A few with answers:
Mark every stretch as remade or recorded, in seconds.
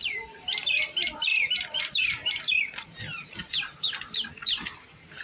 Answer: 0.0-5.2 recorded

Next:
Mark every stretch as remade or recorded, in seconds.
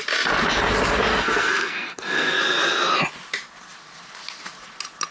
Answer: 0.0-1.1 recorded; 1.1-2.4 remade; 2.4-5.1 recorded